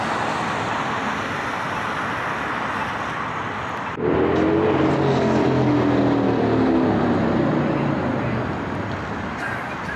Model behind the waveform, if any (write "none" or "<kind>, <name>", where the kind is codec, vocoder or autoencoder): none